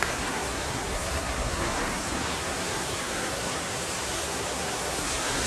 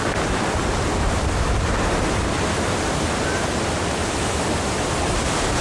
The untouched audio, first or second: second